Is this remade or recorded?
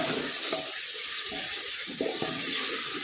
recorded